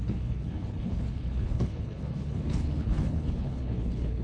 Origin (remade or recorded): remade